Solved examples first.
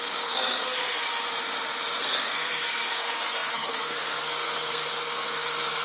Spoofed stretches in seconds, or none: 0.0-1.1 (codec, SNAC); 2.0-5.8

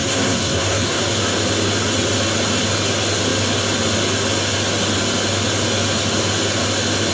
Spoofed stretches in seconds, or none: 0.0-1.0 (codec, SNAC)

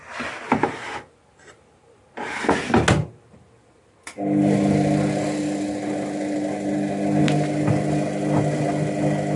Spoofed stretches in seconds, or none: none